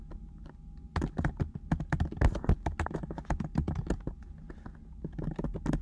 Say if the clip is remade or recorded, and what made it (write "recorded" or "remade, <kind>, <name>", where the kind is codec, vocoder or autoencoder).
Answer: recorded